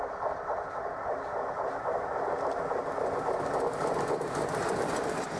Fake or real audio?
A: real